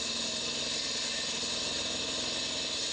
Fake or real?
real